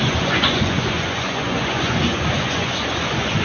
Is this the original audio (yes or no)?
no